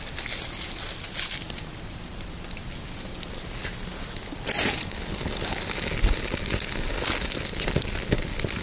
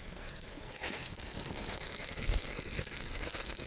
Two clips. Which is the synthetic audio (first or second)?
second